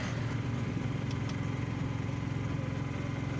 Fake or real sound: real